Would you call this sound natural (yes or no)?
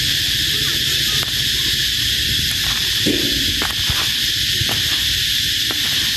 no